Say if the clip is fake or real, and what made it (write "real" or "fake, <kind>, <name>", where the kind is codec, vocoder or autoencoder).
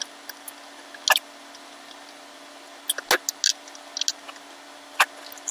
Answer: real